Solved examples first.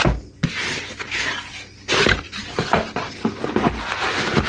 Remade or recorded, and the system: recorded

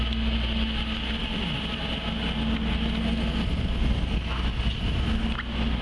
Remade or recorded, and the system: recorded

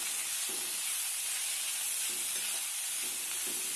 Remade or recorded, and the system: recorded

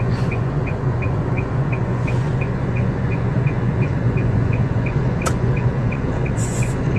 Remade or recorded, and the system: remade, vocoder, Vocos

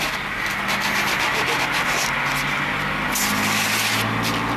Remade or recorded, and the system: recorded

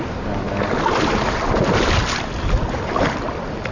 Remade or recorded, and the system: recorded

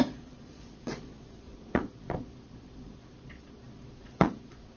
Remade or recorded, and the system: remade, vocoder, Vocos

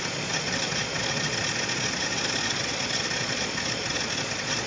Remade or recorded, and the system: remade, vocoder, Vocos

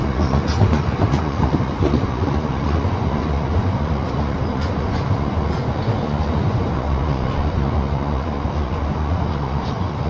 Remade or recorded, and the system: remade, vocoder, Vocos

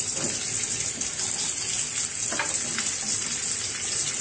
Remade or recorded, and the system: recorded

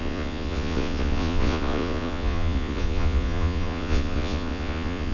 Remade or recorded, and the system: remade, vocoder, Vocos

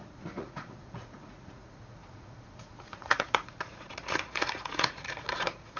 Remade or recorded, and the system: remade, vocoder, Vocos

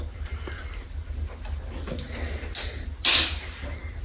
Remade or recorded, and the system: recorded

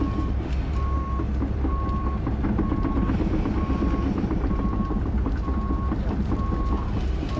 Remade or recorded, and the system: recorded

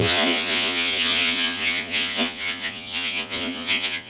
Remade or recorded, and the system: remade, vocoder, Vocos